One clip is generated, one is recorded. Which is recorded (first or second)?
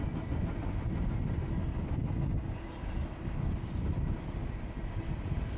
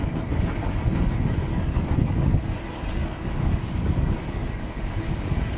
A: first